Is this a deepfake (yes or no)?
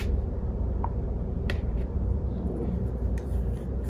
yes